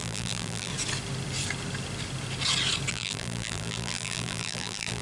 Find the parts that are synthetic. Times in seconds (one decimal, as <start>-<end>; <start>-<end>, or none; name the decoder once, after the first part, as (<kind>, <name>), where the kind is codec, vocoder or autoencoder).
0.0-0.7 (vocoder, BigVGAN v2); 2.9-5.0